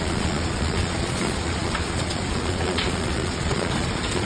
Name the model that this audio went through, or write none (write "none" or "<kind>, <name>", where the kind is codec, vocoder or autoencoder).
vocoder, Vocos